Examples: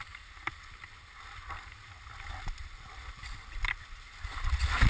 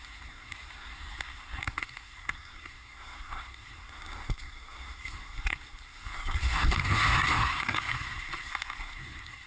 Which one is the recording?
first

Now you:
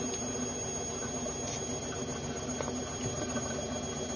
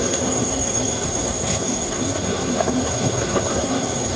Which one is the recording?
first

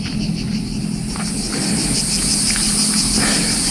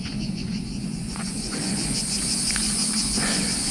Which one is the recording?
first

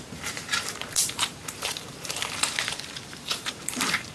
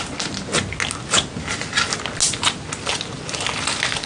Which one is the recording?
second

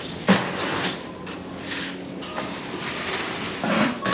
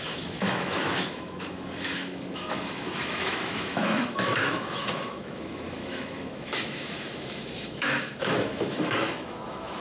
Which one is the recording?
first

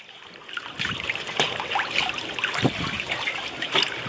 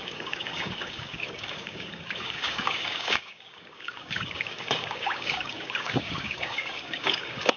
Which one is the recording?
first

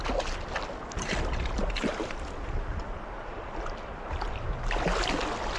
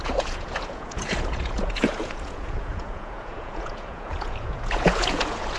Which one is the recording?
first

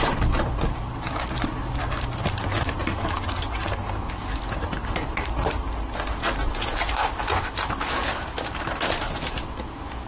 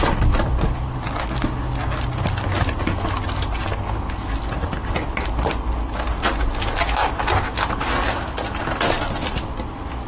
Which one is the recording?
second